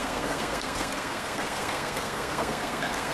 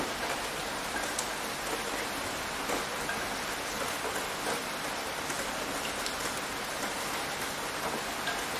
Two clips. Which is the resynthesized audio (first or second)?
first